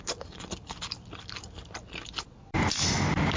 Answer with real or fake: real